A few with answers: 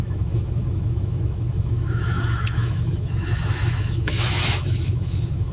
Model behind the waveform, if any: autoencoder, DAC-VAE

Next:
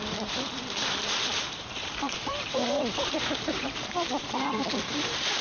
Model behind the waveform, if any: vocoder, BigVGAN v2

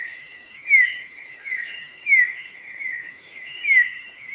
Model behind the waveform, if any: autoencoder, DAC-VAE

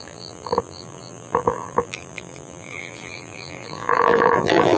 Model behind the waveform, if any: vocoder, BigVGAN v2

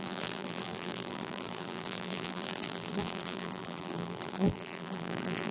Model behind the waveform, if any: vocoder, BigVGAN v2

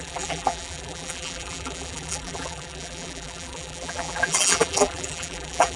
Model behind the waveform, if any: vocoder, BigVGAN v2